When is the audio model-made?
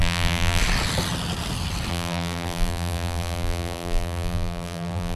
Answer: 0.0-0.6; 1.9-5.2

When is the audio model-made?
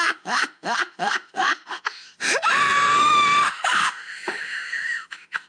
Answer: 0.0-5.5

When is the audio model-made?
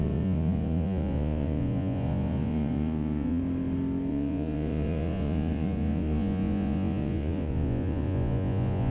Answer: 0.0-3.4; 4.1-8.9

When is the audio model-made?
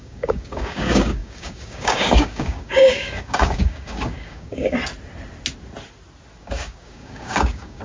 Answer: 0.0-4.8; 6.4-7.8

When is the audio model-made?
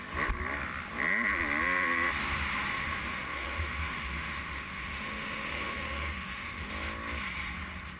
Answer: 2.7-6.7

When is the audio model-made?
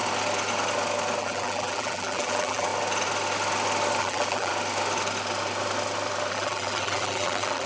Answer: 1.2-2.7; 4.0-4.5; 6.3-7.7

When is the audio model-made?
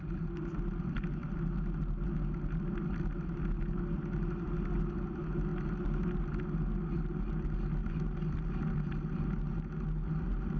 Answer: none